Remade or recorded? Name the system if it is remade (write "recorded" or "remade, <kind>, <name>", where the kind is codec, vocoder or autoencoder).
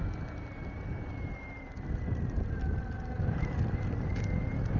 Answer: recorded